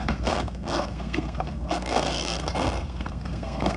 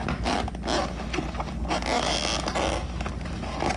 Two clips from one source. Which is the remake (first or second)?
first